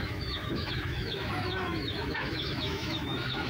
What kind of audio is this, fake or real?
fake